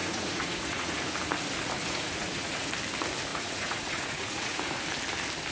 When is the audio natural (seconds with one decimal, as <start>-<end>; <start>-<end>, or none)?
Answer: 1.1-1.8; 2.7-3.3; 4.8-5.5